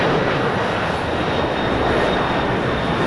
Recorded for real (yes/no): yes